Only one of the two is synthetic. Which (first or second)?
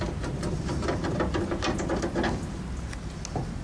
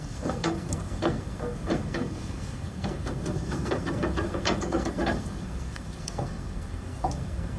second